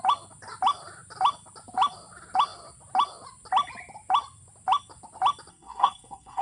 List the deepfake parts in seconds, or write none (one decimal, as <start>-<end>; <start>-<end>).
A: 5.5-6.4